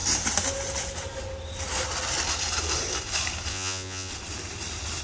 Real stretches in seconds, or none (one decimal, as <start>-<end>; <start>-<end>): 0.0-3.5; 4.1-5.0